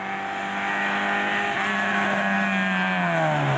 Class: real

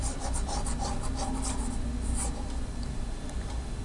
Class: real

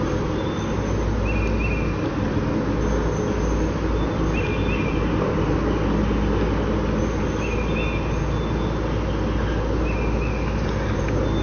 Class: real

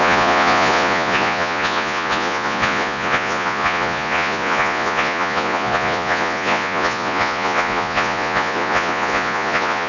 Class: fake